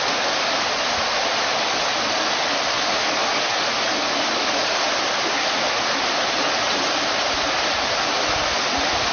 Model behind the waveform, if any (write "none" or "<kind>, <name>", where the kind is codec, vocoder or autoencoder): none